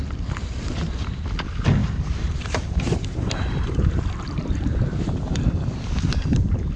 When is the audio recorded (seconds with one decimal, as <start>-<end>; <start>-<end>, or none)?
0.0-1.8; 5.9-6.8